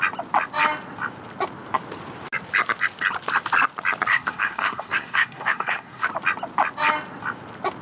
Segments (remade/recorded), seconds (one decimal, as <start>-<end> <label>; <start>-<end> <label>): 0.0-4.1 recorded; 4.1-6.1 remade; 6.1-7.8 recorded